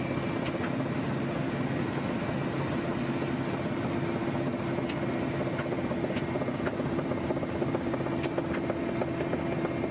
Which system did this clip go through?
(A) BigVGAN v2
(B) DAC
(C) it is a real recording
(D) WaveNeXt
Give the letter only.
C